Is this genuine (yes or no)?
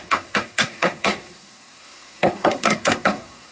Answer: no